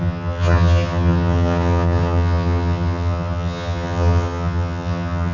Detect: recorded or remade remade